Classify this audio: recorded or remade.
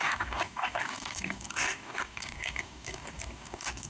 remade